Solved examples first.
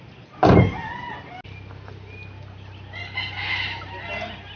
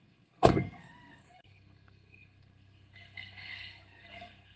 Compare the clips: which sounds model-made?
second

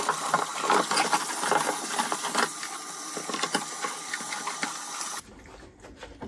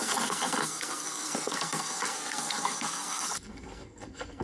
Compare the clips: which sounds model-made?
second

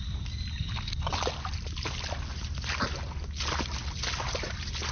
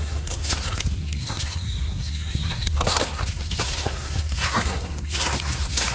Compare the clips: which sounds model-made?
second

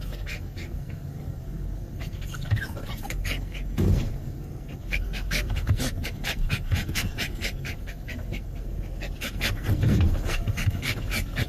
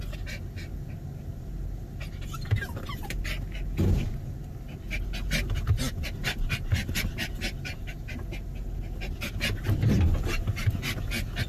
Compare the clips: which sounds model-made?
first